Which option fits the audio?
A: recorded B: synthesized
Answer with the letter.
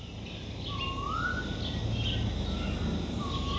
A